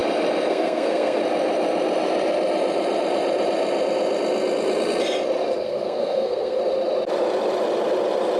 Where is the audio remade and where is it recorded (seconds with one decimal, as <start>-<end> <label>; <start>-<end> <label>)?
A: 0.0-0.5 recorded; 0.5-1.2 remade; 1.2-5.6 recorded; 5.6-6.6 remade; 6.6-8.4 recorded